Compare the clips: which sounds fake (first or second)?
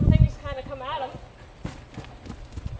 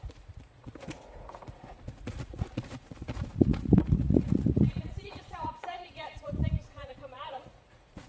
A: second